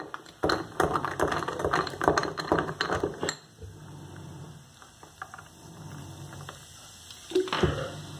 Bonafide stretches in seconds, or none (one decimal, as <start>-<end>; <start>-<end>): 0.0-8.2